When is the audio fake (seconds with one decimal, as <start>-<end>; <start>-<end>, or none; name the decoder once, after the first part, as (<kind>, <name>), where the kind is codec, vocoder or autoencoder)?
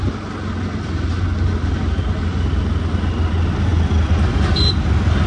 none